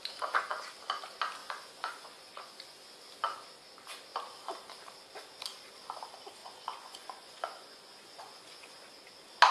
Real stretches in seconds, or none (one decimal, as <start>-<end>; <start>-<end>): 0.0-1.4; 3.0-6.4; 8.9-9.5

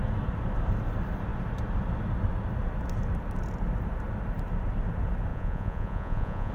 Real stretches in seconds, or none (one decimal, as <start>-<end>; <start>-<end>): 0.0-5.3

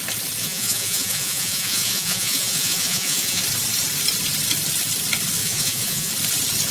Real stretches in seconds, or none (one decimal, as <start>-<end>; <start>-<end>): 0.0-0.4; 3.4-5.4; 6.1-6.7

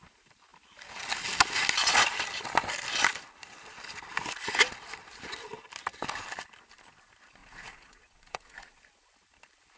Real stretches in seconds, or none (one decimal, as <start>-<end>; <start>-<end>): 0.0-7.4; 8.8-9.8